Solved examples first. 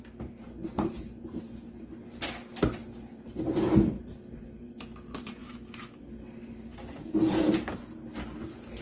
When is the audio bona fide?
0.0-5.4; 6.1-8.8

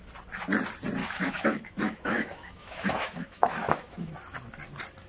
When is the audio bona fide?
0.0-1.0; 4.1-5.1